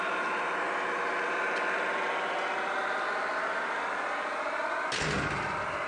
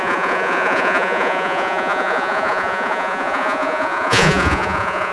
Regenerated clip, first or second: second